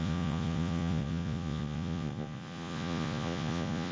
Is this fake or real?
fake